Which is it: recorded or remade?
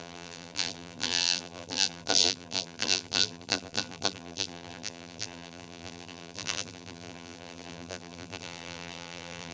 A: remade